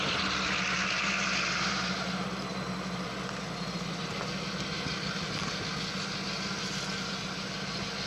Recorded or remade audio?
recorded